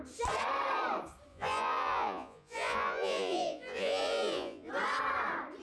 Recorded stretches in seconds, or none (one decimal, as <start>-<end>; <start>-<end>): 0.0-1.3; 4.7-5.6